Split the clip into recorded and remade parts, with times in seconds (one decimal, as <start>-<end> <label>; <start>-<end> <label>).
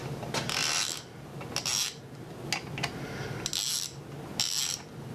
0.0-5.1 recorded